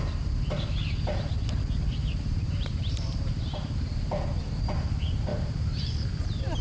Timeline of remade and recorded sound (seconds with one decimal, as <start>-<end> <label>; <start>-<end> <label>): 0.0-1.9 recorded; 1.9-3.9 remade; 3.9-5.3 recorded; 5.3-6.1 remade; 6.1-6.6 recorded

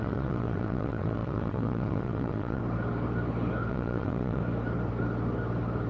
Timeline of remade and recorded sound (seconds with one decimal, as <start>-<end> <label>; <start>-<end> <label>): 0.0-2.6 remade; 2.6-3.7 recorded; 3.7-4.4 remade; 4.4-5.9 recorded

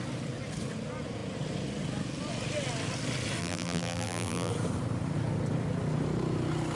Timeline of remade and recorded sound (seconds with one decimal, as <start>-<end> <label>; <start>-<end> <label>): 0.0-3.4 recorded; 3.4-4.5 remade; 4.5-6.7 recorded

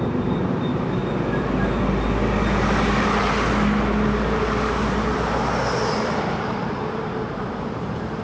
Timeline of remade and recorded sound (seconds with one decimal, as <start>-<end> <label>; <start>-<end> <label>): 0.0-1.0 remade; 1.0-5.9 recorded; 5.9-8.2 remade

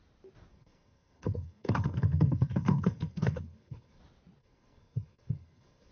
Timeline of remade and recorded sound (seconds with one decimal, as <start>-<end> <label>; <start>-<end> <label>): 0.0-0.5 recorded; 0.5-4.0 remade; 4.0-4.4 recorded; 4.4-5.9 remade

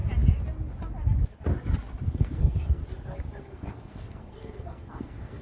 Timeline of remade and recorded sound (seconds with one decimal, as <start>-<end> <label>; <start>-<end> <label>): 0.0-2.1 recorded; 2.1-2.8 remade; 2.8-3.4 recorded; 3.4-5.4 remade

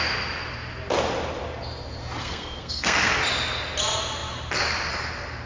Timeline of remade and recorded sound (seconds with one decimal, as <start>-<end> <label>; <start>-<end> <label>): 0.0-2.2 recorded; 2.2-3.1 remade; 3.1-5.5 recorded

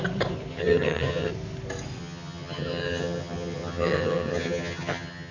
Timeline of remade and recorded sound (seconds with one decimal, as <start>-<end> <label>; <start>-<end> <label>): 0.0-0.5 recorded; 0.5-1.3 remade; 1.3-2.0 recorded; 2.0-5.3 remade